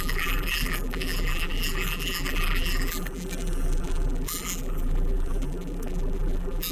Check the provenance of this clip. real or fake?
fake